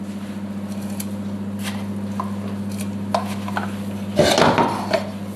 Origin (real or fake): real